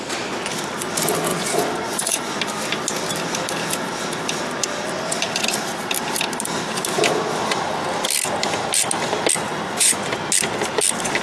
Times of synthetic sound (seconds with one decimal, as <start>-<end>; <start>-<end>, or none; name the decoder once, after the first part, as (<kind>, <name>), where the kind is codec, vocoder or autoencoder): 1.3-2.4 (vocoder, Vocos); 9.5-10.1

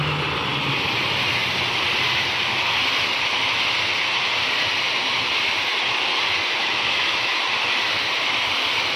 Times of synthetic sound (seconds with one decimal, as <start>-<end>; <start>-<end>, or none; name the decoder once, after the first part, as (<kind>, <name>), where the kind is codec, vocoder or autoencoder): 6.6-7.3 (autoencoder, DAC-VAE)

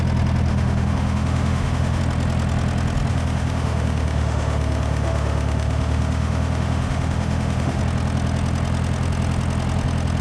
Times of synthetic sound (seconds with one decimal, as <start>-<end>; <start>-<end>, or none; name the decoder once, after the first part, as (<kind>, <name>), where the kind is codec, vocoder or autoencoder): 0.5-2.0 (autoencoder, DAC-VAE); 3.1-7.8

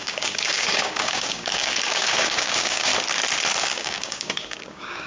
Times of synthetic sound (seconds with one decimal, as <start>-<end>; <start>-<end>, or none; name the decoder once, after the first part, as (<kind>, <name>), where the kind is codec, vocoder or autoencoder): 0.0-2.9 (codec, DAC); 3.6-5.1

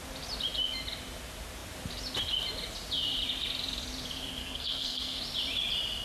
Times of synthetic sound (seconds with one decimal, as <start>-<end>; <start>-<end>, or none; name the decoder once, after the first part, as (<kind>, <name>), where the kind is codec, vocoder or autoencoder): 4.4-5.2 (codec, SNAC)